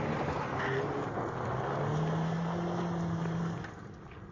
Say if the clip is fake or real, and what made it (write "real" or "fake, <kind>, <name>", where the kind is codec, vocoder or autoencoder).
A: real